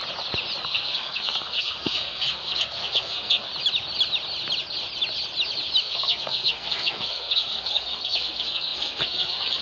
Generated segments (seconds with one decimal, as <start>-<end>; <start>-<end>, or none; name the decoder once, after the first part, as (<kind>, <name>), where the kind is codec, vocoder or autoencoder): 0.6-3.5 (codec, SNAC); 5.8-9.6